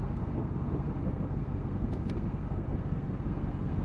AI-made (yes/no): yes